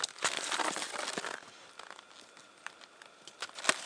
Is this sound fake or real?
real